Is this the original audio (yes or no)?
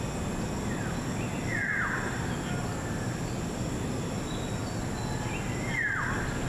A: yes